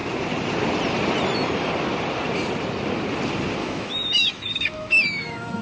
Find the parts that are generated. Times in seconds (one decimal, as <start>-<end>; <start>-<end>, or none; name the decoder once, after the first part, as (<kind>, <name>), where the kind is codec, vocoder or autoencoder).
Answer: 3.6-5.6 (autoencoder, DAC-VAE)

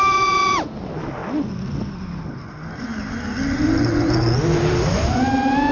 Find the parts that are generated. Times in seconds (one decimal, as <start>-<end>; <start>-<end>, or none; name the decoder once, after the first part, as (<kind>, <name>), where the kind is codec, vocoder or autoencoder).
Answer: none

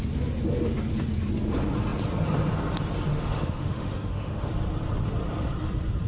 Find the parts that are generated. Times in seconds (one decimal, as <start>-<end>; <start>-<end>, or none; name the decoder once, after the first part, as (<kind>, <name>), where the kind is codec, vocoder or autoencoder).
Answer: 3.1-4.5 (autoencoder, DAC-VAE)

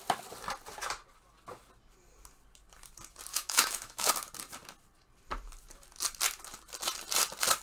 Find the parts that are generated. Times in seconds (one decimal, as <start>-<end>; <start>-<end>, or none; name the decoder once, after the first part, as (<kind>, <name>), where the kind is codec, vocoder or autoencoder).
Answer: 3.3-4.1 (autoencoder, DAC-VAE)